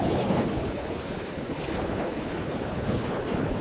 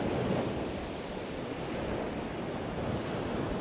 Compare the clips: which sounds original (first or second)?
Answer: second